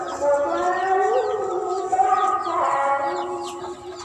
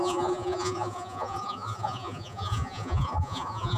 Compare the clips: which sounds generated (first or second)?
second